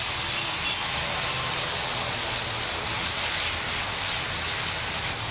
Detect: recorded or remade recorded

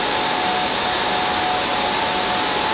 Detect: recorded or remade recorded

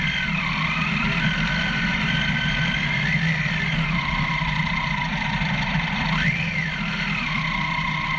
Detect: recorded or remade recorded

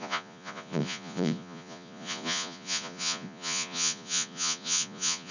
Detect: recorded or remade remade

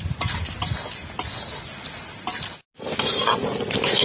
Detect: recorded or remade recorded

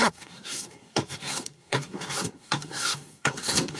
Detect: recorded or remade remade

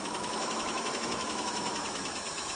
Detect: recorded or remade remade